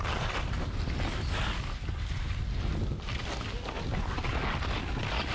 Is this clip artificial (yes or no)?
no